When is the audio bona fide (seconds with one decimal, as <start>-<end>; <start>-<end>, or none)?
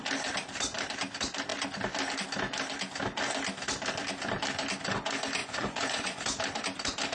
0.0-5.4; 6.2-7.1